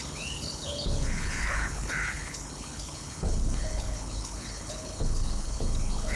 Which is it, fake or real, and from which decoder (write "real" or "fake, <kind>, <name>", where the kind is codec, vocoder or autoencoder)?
fake, codec, HILCodec